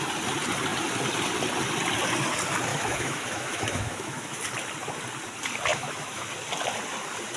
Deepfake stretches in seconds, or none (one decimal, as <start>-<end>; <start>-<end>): 2.7-4.4; 5.7-6.3